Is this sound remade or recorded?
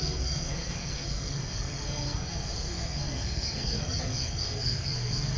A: remade